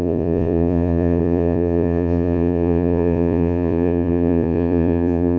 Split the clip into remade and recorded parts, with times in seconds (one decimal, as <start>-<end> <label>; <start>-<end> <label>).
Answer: 0.0-5.4 remade